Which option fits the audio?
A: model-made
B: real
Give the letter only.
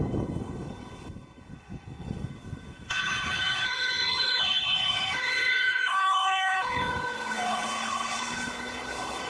A